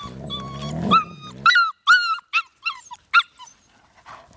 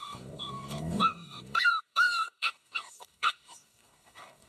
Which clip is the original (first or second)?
first